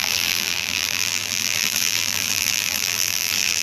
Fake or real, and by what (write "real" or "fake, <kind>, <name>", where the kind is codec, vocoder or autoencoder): fake, vocoder, BigVGAN v2